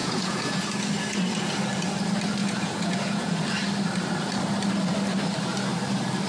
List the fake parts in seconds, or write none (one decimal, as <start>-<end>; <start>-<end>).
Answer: 0.0-0.6; 2.4-3.4